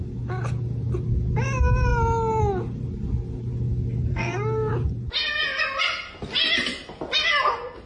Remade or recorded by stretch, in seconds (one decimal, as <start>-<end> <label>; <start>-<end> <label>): 0.0-4.1 recorded; 4.1-4.7 remade; 4.7-7.9 recorded